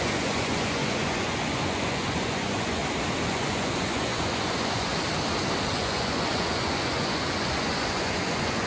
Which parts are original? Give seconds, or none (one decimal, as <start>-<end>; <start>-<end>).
2.8-3.3; 4.9-5.7